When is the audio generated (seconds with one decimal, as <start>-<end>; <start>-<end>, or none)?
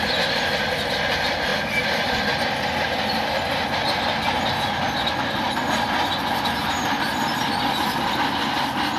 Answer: none